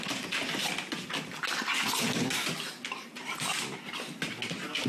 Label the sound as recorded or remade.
recorded